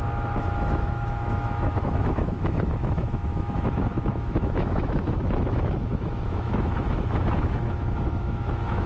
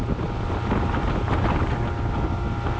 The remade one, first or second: first